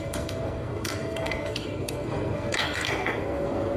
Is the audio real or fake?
fake